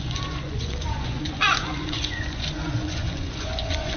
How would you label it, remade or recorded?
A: remade